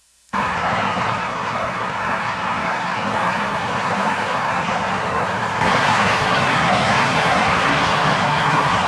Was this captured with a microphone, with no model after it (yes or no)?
no